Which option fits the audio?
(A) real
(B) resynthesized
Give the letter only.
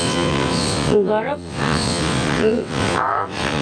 B